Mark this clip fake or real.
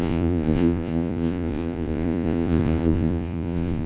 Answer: fake